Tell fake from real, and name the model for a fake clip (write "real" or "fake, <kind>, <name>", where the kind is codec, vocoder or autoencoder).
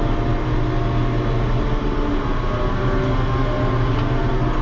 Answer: real